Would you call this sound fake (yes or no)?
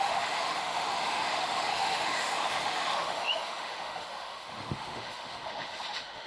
yes